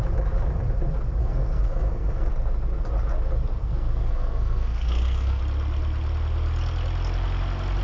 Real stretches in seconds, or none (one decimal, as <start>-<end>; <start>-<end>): 0.0-1.2; 2.3-3.6; 5.4-7.8